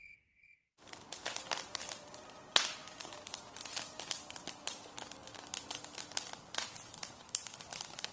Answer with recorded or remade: recorded